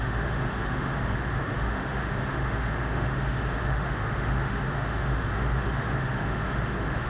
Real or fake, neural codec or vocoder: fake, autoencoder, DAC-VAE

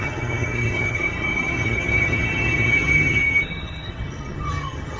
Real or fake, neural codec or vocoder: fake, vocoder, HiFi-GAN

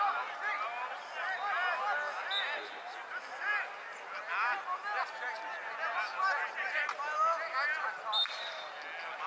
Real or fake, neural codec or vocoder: real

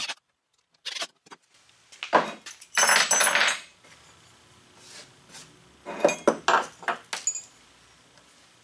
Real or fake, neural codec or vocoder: real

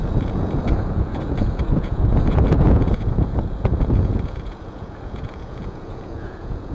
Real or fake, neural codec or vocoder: fake, vocoder, Vocos